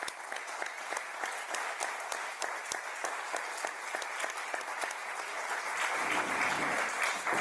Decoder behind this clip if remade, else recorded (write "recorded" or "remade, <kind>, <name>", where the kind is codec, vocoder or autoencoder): recorded